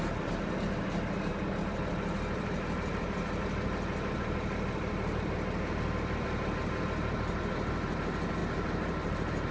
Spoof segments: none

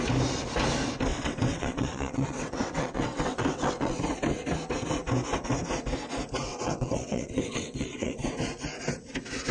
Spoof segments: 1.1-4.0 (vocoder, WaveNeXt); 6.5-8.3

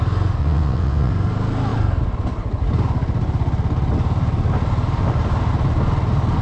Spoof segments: 0.4-1.1 (vocoder, WaveNeXt)

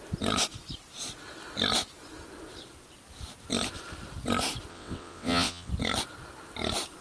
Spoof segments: 4.7-5.7 (vocoder, WaveNeXt)

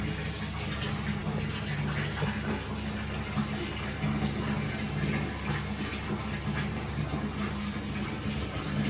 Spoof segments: none

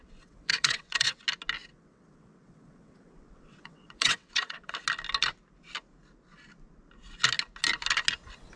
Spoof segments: 0.0-1.2 (vocoder, WaveNeXt); 1.7-4.7

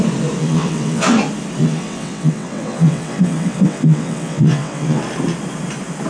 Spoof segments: 0.4-1.2 (vocoder, WaveNeXt); 1.6-5.0

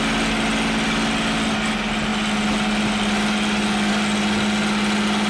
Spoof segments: none